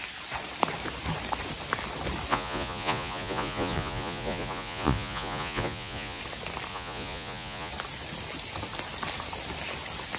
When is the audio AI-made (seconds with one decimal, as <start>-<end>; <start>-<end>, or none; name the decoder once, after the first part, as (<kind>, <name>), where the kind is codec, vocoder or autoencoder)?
2.3-6.2 (vocoder, Vocos); 6.7-7.7